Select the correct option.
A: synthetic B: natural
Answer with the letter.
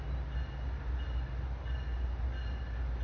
B